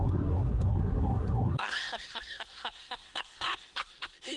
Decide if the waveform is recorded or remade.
remade